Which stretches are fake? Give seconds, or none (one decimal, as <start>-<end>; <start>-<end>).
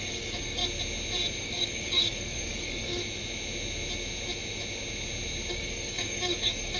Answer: 0.0-0.6; 1.4-3.0; 5.5-6.8